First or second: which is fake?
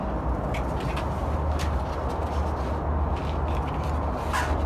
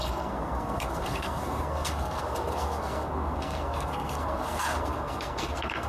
second